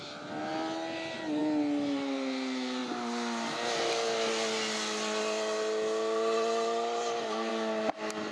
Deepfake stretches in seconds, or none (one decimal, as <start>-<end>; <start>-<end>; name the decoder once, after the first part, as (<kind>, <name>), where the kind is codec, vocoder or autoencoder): none